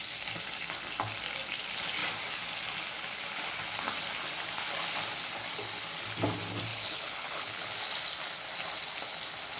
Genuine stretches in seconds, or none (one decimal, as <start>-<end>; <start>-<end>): 0.0-6.7; 7.7-9.6